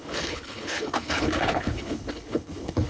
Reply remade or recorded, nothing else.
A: remade